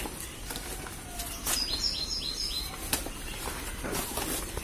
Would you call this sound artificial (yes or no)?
no